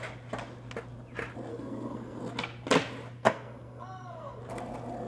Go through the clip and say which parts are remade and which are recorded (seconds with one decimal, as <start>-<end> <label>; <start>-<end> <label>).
0.0-1.5 recorded; 1.5-2.2 remade; 2.2-3.2 recorded; 3.2-4.4 remade; 4.4-5.1 recorded